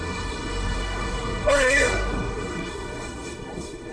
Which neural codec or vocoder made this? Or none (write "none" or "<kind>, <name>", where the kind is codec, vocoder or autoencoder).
codec, SNAC